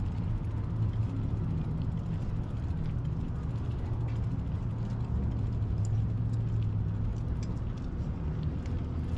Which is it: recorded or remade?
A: recorded